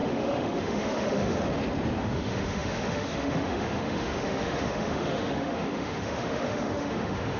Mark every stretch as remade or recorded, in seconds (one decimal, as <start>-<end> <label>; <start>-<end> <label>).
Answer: 0.0-1.4 remade; 1.4-2.0 recorded; 2.0-7.4 remade